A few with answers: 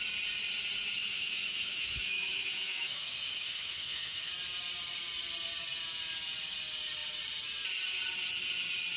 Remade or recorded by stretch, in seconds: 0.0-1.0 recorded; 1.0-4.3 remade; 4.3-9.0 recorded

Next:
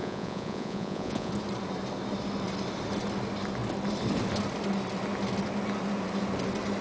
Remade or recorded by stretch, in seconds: 0.0-1.3 remade; 1.3-6.8 recorded

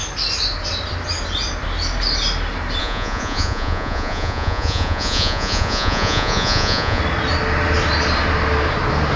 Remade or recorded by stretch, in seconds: 0.0-2.8 recorded; 2.8-7.0 remade; 7.0-9.2 recorded

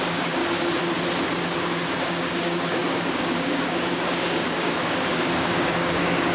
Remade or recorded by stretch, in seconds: 0.0-0.4 remade; 0.4-2.0 recorded; 2.0-6.3 remade

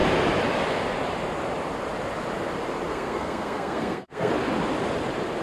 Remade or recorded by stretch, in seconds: 0.0-2.9 recorded; 2.9-4.3 remade; 4.3-5.4 recorded

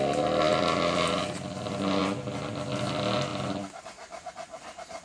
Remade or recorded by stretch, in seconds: 0.0-5.0 recorded

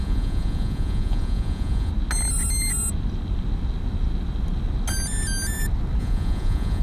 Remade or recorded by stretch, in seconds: 0.0-1.9 remade; 1.9-6.0 recorded; 6.0-6.8 remade